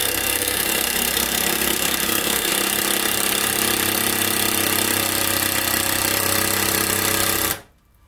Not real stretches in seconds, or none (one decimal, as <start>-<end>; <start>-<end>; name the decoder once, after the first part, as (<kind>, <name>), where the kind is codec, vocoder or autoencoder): 0.0-2.5 (codec, SNAC)